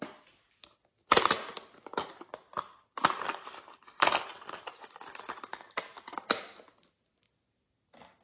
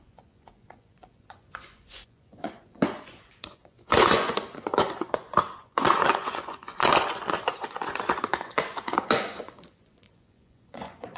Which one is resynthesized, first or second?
second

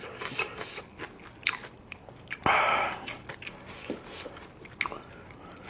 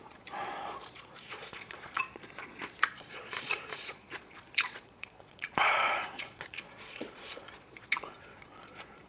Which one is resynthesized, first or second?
second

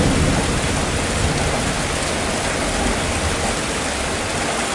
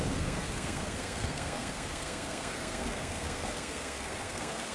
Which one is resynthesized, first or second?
second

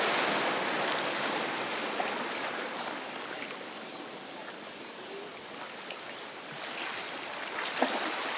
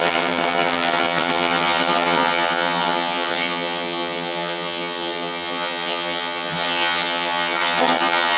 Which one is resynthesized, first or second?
second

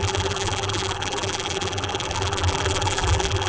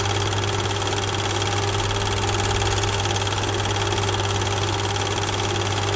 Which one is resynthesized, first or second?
first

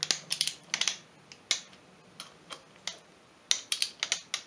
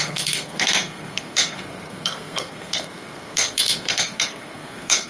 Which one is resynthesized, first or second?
second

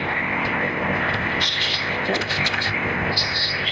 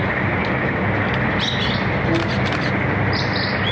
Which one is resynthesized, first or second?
first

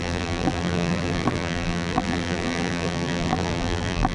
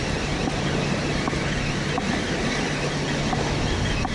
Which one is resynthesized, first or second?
first